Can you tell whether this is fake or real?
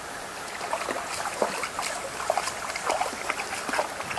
real